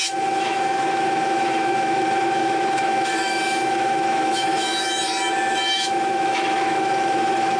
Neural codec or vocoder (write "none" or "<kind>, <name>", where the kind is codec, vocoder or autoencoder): autoencoder, DAC-VAE